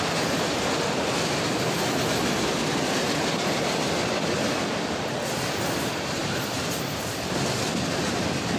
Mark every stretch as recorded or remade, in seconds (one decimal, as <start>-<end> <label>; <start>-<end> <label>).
0.0-8.6 recorded

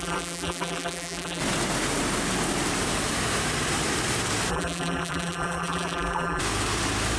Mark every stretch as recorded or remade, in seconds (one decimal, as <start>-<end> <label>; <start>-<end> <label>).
0.0-1.4 remade; 1.4-4.5 recorded; 4.5-6.4 remade; 6.4-7.2 recorded

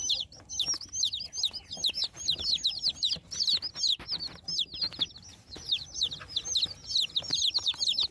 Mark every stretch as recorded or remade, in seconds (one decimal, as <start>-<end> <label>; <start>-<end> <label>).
0.0-0.5 remade; 0.5-5.3 recorded; 5.3-6.0 remade; 6.0-8.1 recorded